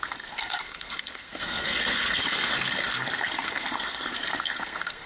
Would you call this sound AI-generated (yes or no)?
yes